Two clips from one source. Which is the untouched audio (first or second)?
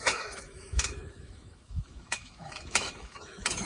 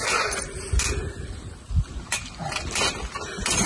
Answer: second